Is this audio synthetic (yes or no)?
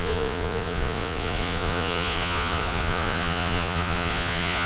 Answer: yes